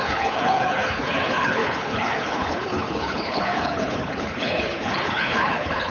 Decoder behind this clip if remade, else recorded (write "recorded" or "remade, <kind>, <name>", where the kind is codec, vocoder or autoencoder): remade, codec, HILCodec